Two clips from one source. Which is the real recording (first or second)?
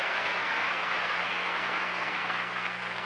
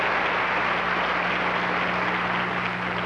second